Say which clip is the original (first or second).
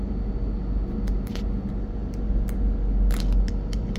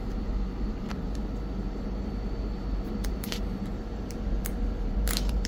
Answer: first